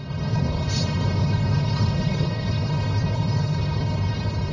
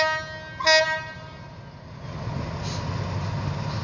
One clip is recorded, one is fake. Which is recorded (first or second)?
second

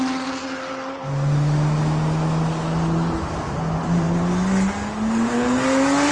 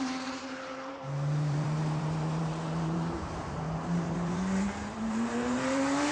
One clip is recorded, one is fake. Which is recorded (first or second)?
first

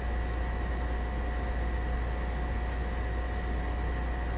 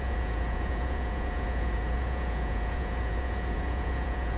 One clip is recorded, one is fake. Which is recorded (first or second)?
first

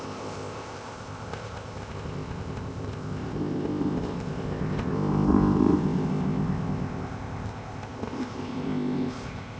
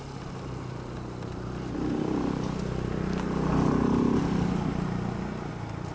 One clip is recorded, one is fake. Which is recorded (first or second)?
second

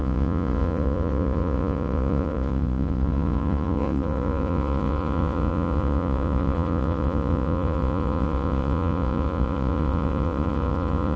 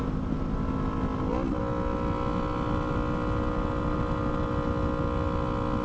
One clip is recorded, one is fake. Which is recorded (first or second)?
second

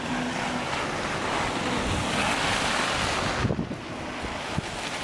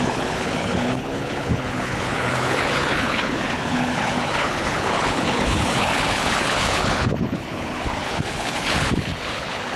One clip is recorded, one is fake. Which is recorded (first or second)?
first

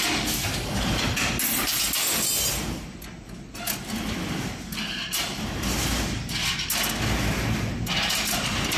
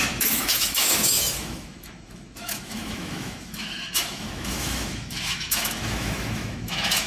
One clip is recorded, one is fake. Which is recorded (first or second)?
first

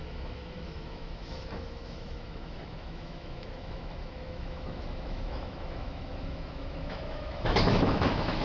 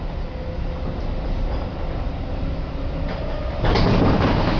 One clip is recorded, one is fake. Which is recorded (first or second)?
second